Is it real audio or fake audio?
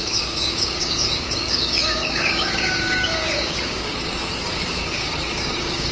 fake